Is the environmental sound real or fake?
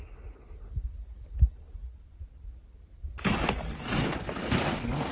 real